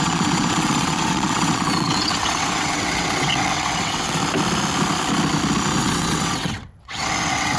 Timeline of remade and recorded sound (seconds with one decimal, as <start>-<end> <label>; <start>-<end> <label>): 0.0-4.2 remade; 4.2-5.8 recorded; 5.8-7.6 remade